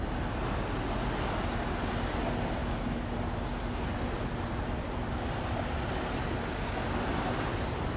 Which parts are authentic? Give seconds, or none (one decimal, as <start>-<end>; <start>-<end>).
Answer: 0.0-8.0